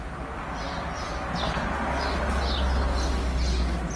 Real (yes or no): yes